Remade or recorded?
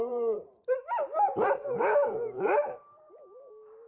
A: remade